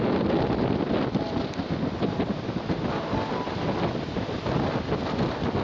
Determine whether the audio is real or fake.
real